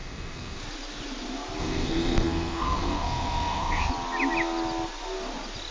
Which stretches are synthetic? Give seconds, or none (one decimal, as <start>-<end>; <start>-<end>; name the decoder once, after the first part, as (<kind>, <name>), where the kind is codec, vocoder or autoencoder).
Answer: 0.0-0.6 (codec, SNAC); 1.6-3.9